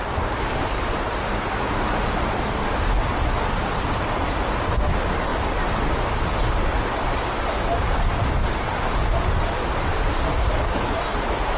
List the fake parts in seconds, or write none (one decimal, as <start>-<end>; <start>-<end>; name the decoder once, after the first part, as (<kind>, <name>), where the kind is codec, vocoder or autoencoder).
none